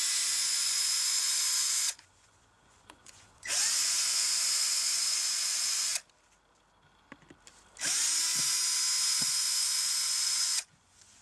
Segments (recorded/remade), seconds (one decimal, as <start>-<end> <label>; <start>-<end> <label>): 0.0-5.9 remade; 5.9-9.1 recorded; 9.1-11.2 remade